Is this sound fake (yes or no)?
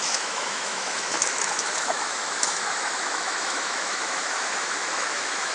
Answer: yes